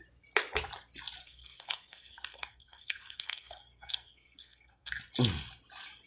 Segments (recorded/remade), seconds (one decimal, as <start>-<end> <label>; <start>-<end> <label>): 0.0-1.2 recorded; 1.2-4.9 remade; 4.9-6.1 recorded